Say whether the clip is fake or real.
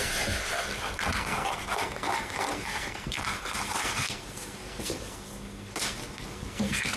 fake